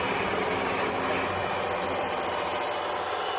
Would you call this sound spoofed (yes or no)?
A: no